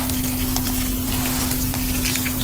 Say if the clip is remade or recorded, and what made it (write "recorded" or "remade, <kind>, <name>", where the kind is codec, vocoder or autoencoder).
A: recorded